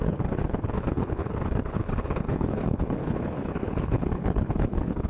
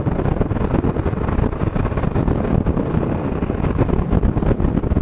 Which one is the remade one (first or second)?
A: first